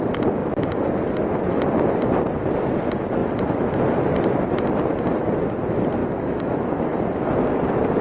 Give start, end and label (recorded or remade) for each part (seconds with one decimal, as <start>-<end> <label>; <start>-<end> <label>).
0.0-6.0 recorded; 6.0-7.3 remade; 7.3-8.0 recorded